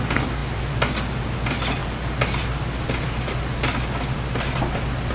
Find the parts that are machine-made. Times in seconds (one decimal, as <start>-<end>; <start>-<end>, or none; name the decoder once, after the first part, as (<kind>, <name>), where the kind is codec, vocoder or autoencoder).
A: none